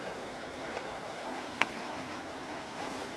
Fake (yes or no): yes